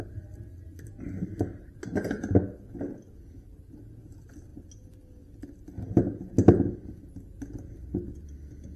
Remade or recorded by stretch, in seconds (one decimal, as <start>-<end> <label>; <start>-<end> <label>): 0.0-8.8 recorded